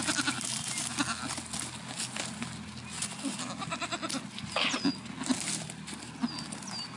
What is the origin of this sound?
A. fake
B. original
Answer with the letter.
B